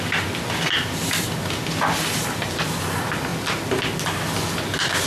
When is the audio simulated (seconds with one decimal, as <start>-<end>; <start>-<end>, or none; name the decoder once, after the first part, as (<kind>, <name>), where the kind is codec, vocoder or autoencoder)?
none

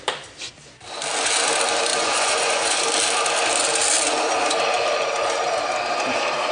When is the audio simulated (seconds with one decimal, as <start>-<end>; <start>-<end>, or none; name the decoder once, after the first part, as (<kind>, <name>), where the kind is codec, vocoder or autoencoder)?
1.9-2.8 (vocoder, Vocos)

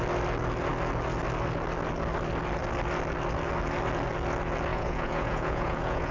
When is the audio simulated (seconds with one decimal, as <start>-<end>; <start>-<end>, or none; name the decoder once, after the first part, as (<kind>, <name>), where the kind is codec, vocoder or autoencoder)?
4.7-6.1 (vocoder, Vocos)

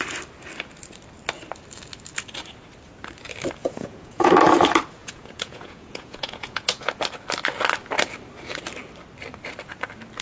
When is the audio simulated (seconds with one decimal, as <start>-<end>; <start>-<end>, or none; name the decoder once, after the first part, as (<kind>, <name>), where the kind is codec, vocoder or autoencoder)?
3.6-4.3 (vocoder, Vocos); 5.0-6.9

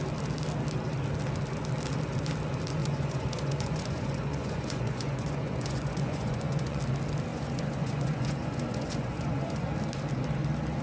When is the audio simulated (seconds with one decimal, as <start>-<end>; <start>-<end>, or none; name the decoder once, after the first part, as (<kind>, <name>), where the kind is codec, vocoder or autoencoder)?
2.8-6.8 (vocoder, Vocos); 7.3-9.7

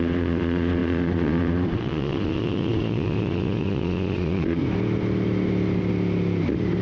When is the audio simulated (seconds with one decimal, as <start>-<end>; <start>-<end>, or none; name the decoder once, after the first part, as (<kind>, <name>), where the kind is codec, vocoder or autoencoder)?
0.0-4.6 (vocoder, Vocos)

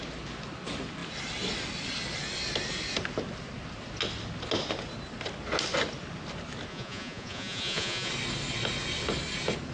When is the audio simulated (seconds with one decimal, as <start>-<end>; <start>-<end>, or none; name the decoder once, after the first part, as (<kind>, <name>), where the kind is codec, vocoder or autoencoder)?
6.7-8.1 (vocoder, Vocos)

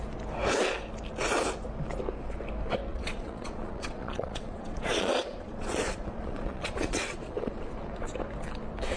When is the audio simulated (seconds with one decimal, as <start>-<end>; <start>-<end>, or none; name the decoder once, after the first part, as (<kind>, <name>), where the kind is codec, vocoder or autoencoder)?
2.9-7.5 (vocoder, Vocos)